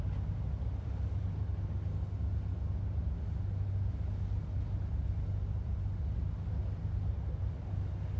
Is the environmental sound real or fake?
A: real